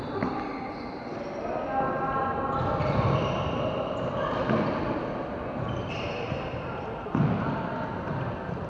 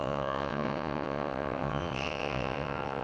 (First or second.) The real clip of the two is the first